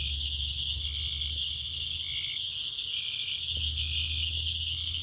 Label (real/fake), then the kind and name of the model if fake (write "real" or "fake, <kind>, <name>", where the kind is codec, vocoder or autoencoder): real